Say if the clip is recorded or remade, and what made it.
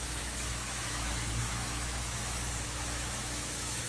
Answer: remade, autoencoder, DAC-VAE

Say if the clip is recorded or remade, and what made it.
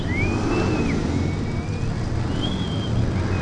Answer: recorded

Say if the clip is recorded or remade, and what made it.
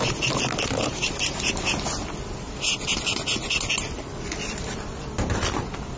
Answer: recorded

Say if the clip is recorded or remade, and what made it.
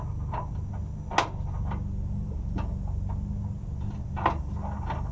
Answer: recorded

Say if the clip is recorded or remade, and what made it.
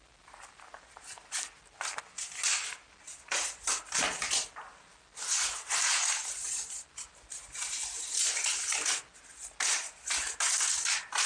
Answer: recorded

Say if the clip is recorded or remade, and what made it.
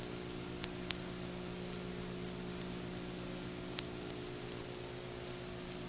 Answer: recorded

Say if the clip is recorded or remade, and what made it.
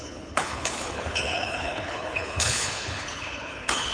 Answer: remade, codec, HILCodec